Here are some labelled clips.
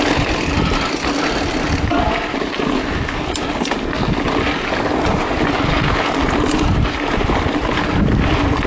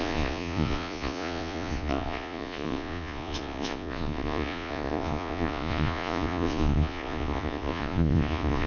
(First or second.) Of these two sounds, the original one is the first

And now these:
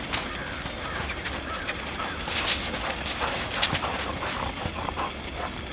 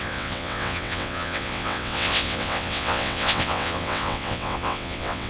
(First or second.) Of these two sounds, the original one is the first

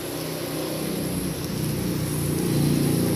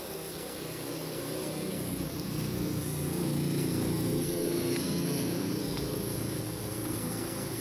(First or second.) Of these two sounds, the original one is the first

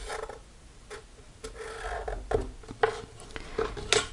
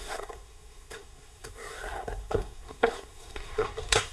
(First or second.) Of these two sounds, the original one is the first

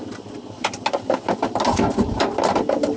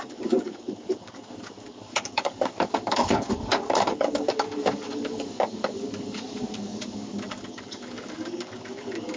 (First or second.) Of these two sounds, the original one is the first